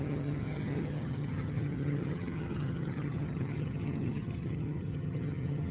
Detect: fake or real fake